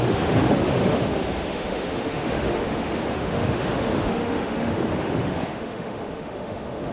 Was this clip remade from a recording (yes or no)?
yes